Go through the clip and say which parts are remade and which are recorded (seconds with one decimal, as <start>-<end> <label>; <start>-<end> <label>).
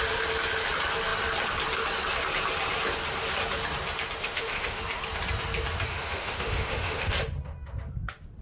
0.0-4.2 recorded; 4.2-4.8 remade; 4.8-5.9 recorded; 5.9-7.1 remade; 7.1-8.4 recorded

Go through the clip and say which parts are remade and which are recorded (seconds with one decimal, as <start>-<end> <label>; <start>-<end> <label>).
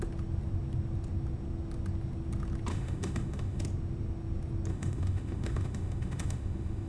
0.0-2.7 recorded; 2.7-3.6 remade; 3.6-4.7 recorded; 4.7-6.9 remade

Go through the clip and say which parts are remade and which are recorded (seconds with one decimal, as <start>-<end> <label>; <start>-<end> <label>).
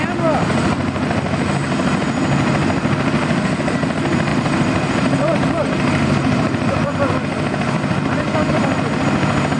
0.0-4.3 recorded; 4.3-6.9 remade; 6.9-9.6 recorded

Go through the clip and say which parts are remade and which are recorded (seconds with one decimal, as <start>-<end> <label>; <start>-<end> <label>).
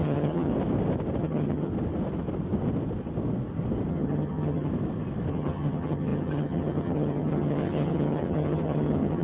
0.0-0.5 remade; 0.5-1.2 recorded; 1.2-1.7 remade; 1.7-3.9 recorded; 3.9-4.7 remade; 4.7-5.3 recorded; 5.3-9.2 remade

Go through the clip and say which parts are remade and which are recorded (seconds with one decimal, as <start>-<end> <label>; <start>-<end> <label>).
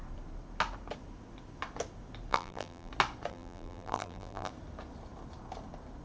0.0-2.3 recorded; 2.3-2.9 remade; 2.9-3.3 recorded; 3.3-4.5 remade; 4.5-6.0 recorded